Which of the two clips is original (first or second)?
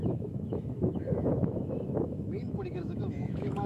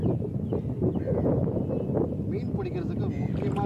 second